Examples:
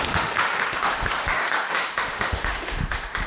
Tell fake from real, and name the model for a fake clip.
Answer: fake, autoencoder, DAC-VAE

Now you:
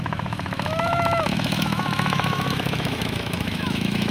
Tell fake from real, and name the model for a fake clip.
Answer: fake, autoencoder, DAC-VAE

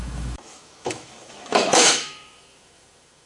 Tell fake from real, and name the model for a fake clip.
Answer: fake, autoencoder, DAC-VAE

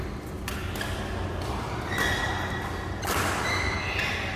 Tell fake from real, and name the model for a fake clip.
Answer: real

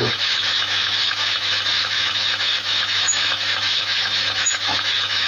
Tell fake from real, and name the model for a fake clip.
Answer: fake, autoencoder, DAC-VAE